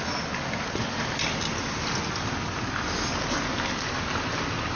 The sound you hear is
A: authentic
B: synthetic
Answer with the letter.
A